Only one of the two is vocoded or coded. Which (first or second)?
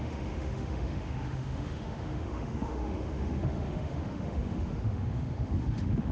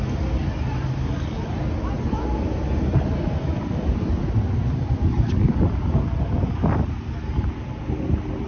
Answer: first